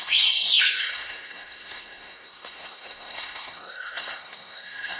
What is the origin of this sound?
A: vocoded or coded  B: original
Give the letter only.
A